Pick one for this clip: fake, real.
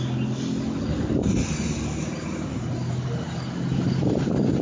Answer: real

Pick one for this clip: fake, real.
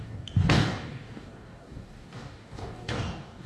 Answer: fake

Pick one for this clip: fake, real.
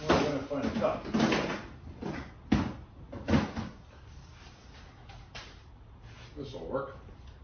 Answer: real